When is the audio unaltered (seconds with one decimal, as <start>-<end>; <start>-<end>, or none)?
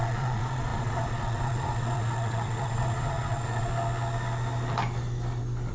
3.7-5.7